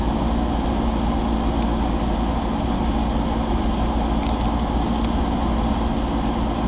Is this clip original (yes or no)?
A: yes